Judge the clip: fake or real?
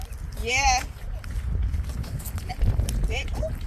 real